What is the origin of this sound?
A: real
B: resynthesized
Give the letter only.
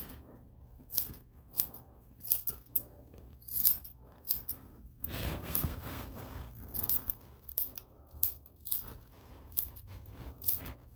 B